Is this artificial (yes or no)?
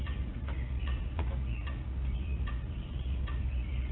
yes